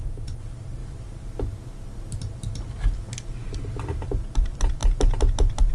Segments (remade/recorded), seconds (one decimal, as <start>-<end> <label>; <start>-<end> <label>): 0.0-0.8 remade; 0.8-4.2 recorded; 4.2-4.8 remade; 4.8-5.7 recorded